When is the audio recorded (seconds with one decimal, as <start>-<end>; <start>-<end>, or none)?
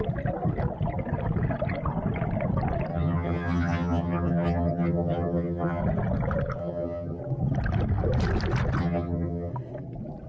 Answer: 0.0-2.9; 5.8-6.6; 7.2-8.8; 9.5-10.3